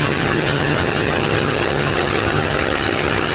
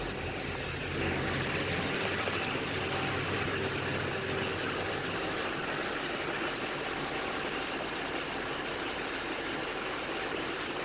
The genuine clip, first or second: second